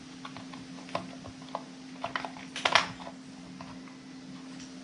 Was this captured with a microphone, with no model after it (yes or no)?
yes